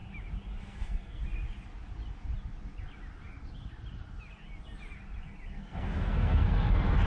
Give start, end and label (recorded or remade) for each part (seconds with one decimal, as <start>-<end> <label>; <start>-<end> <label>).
0.0-0.6 recorded; 0.6-1.2 remade; 1.2-5.5 recorded; 5.5-7.1 remade